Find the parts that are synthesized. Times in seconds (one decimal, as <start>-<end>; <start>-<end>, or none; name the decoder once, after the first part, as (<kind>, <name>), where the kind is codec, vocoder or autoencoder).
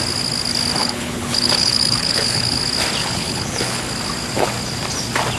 0.8-2.6 (codec, HILCodec); 3.0-3.8